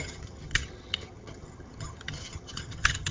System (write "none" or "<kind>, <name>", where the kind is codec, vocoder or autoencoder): vocoder, HiFi-GAN